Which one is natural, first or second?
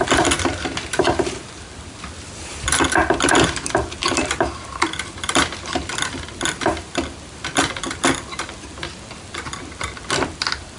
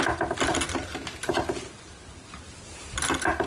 second